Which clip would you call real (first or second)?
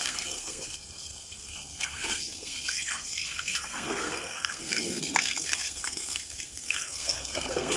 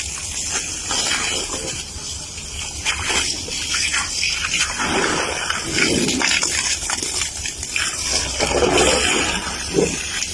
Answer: second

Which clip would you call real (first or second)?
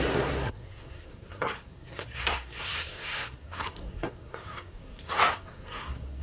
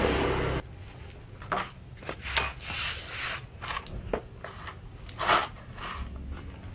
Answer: second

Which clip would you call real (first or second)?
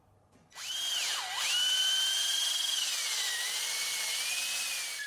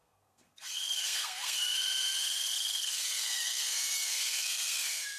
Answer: first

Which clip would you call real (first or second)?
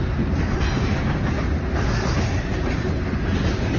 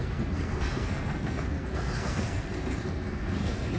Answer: first